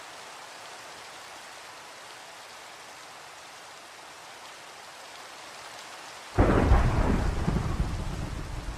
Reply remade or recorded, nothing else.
recorded